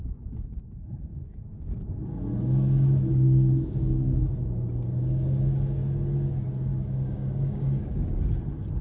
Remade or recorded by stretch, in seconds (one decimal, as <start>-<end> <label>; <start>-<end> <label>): 0.0-1.1 recorded; 1.1-5.8 remade; 5.8-6.7 recorded; 6.7-8.0 remade; 8.0-8.8 recorded